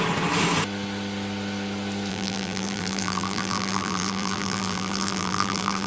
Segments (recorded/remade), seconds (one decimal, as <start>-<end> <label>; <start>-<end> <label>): 0.0-2.1 recorded; 2.1-5.9 remade